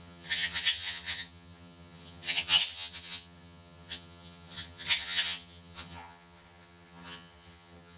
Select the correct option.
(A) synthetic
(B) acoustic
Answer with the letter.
A